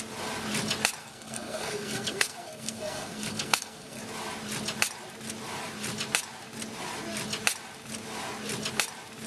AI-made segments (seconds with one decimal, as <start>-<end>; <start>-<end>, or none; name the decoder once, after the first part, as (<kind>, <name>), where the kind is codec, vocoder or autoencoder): 1.0-4.0 (codec, SNAC)